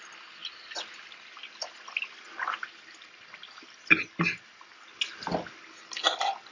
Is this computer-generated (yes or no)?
no